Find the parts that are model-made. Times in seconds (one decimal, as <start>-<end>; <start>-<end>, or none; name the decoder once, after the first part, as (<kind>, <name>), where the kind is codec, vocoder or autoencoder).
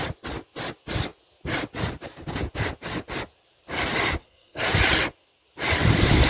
4.2-4.7 (codec, SNAC)